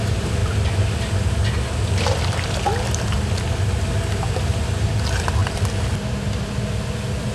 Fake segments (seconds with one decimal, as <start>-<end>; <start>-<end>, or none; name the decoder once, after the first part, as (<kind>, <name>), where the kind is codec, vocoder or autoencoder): 0.0-0.4 (vocoder, BigVGAN v2); 4.4-5.4